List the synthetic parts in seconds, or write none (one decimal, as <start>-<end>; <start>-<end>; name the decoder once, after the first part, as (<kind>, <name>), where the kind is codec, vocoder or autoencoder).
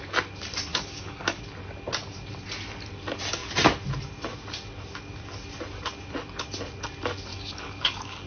0.7-1.4 (codec, DAC); 7.3-8.3